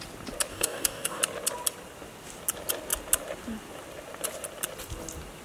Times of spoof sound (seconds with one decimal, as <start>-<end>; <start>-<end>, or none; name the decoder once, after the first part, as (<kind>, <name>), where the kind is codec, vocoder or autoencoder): 0.5-1.2 (codec, DAC)